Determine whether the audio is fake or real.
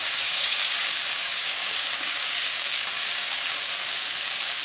fake